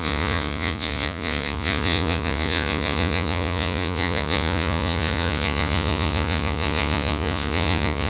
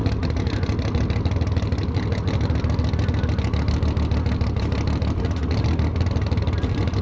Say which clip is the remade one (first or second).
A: first